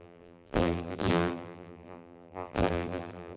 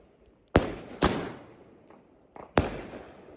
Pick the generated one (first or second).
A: first